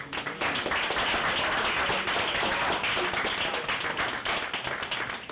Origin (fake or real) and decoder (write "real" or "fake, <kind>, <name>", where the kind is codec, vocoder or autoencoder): real